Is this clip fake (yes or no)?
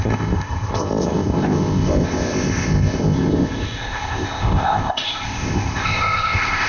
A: yes